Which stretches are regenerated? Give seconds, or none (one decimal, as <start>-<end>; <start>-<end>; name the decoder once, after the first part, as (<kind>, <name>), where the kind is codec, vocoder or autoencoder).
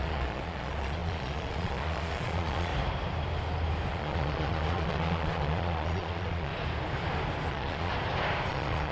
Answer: 0.0-2.7 (vocoder, Vocos); 3.9-6.5; 7.5-7.9; 8.5-8.9